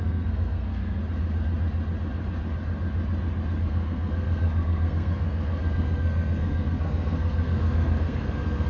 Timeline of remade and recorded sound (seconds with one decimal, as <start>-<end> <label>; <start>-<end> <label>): 0.0-1.0 remade; 1.0-3.6 recorded; 3.6-8.7 remade

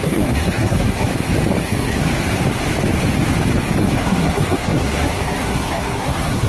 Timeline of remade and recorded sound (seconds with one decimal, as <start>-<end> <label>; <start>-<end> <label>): 0.0-1.1 remade; 1.1-1.6 recorded; 1.6-2.1 remade; 2.1-3.8 recorded; 3.8-6.5 remade

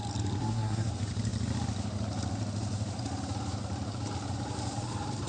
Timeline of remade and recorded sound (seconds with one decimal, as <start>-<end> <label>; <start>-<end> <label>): 0.0-0.4 recorded; 0.4-0.9 remade; 0.9-5.3 recorded

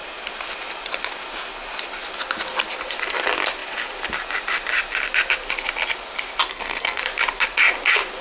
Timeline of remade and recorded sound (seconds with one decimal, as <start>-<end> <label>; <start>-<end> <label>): 0.0-6.5 recorded; 6.5-7.0 remade; 7.0-8.2 recorded

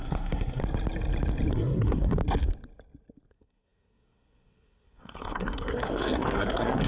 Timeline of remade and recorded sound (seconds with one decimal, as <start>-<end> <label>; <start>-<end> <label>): 0.0-0.6 remade; 0.6-1.5 recorded; 1.5-2.2 remade; 2.2-3.3 recorded; 3.3-6.9 remade

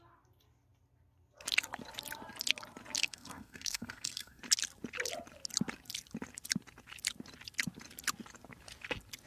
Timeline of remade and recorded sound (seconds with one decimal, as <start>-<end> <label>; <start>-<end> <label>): 0.0-3.0 recorded; 3.0-4.4 remade; 4.4-9.3 recorded